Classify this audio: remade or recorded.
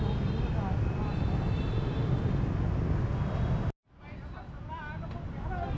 recorded